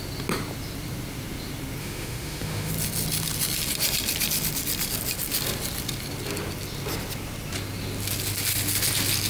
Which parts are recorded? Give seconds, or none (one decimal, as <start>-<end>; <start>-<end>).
0.0-1.8; 2.7-9.3